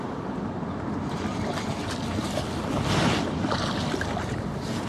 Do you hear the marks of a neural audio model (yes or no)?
no